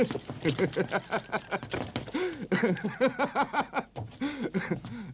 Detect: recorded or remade recorded